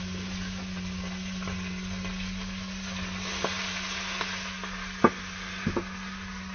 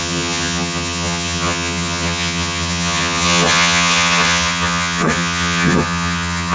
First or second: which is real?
first